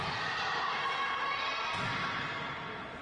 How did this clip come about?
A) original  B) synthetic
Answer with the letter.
A